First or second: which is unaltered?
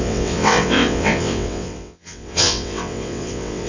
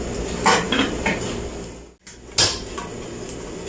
second